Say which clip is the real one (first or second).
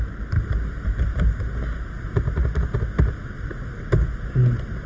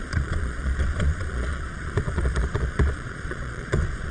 first